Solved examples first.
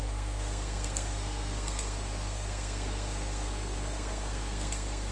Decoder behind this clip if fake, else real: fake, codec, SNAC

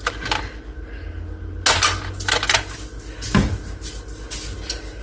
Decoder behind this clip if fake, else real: real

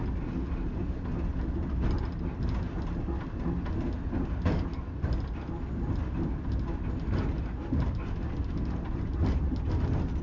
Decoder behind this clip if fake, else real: real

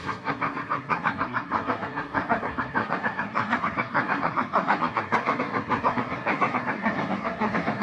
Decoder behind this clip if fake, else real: fake, codec, SNAC